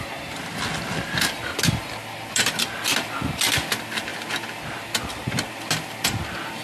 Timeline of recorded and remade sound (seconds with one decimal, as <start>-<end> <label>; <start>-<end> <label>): 0.0-6.6 recorded